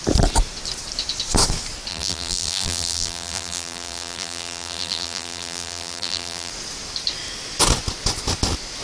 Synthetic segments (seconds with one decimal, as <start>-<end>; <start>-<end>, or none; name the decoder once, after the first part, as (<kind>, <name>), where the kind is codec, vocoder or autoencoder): 1.9-6.5 (vocoder, BigVGAN v2)

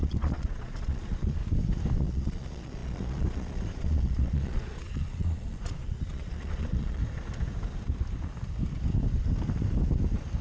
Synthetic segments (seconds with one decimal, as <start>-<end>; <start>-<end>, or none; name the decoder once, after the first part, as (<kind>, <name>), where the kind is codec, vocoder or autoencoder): 0.0-1.4 (vocoder, Vocos); 2.0-7.0